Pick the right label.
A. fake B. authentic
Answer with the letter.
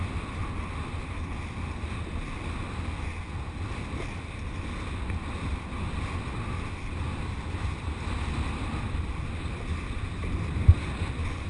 B